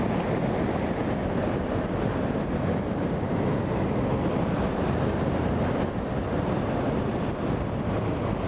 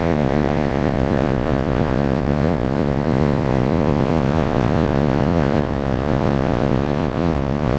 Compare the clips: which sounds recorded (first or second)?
first